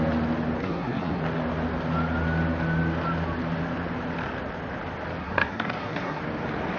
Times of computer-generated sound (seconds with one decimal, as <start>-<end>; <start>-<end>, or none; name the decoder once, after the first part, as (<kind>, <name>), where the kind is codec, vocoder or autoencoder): 0.6-1.2 (codec, SNAC); 5.2-6.2